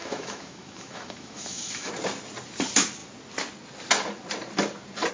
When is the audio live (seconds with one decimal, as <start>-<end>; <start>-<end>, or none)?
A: 1.9-5.1